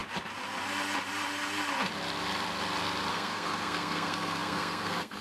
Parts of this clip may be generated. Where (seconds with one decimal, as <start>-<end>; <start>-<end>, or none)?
3.1-5.2